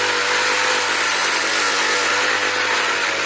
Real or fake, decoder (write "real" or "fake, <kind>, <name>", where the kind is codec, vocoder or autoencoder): real